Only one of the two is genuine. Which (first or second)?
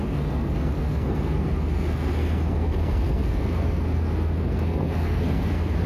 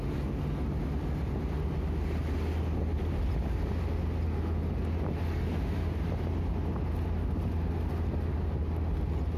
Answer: second